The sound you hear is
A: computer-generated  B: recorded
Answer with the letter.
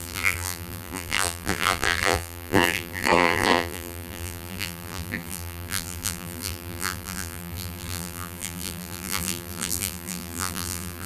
A